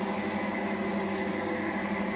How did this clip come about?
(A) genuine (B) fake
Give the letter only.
A